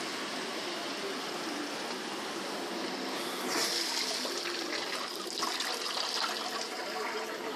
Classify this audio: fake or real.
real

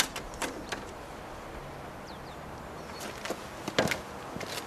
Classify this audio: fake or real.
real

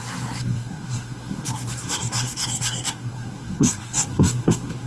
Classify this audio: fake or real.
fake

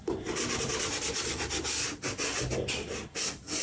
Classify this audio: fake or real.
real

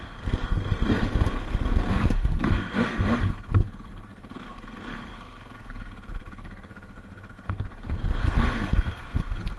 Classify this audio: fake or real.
fake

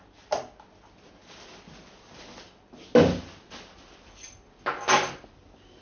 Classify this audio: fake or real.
real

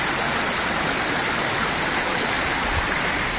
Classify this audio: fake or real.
real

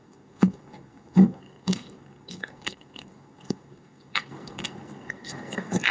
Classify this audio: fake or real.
fake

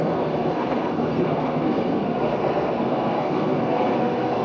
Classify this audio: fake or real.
fake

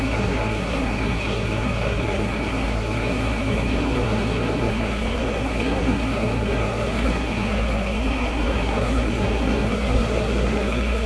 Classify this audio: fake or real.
fake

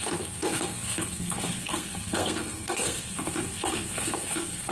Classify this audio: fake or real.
fake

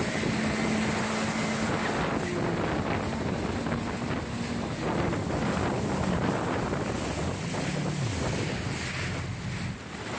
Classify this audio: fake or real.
real